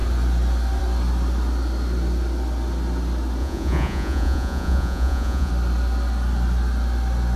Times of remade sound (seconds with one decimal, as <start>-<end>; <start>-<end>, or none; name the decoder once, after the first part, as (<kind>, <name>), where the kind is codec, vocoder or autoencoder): 3.4-5.5 (vocoder, Vocos)